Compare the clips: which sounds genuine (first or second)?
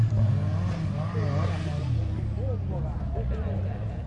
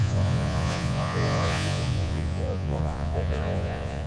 first